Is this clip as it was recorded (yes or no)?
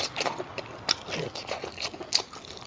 yes